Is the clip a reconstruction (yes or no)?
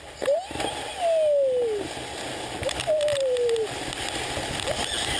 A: no